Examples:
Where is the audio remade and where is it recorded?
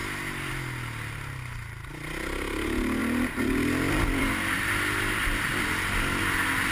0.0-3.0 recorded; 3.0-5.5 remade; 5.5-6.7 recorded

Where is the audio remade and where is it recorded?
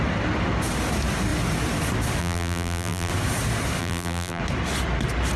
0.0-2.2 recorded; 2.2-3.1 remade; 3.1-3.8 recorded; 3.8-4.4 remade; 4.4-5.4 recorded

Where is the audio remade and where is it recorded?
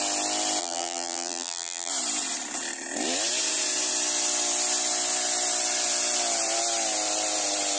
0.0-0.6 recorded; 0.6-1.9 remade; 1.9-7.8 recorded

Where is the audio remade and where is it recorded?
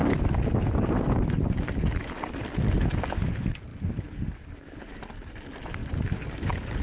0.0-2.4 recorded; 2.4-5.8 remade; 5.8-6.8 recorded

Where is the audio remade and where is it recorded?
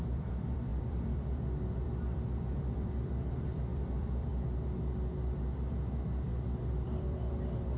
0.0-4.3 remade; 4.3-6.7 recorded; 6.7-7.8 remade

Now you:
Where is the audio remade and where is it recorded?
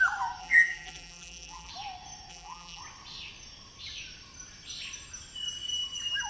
0.0-0.4 recorded; 0.4-1.7 remade; 1.7-2.3 recorded; 2.3-2.8 remade; 2.8-6.3 recorded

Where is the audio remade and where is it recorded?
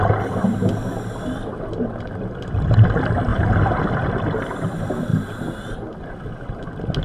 0.0-3.3 recorded; 3.3-3.8 remade; 3.8-7.0 recorded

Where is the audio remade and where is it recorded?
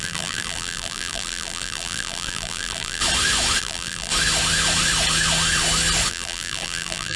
0.0-3.0 remade; 3.0-3.6 recorded; 3.6-4.1 remade; 4.1-6.1 recorded; 6.1-7.2 remade